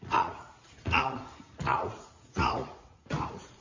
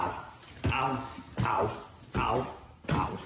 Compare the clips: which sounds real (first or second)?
second